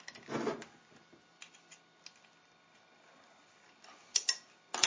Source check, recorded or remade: recorded